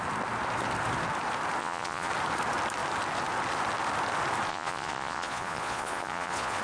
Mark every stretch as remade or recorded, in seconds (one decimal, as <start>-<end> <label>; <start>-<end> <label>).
0.0-1.6 recorded; 1.6-2.1 remade; 2.1-4.5 recorded; 4.5-6.6 remade